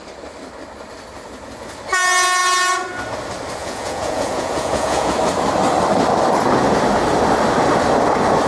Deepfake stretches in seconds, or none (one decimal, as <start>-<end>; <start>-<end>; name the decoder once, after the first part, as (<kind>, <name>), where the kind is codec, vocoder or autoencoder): 3.6-5.1 (vocoder, Vocos)